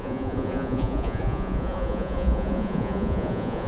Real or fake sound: fake